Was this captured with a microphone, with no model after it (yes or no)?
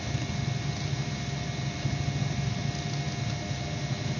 yes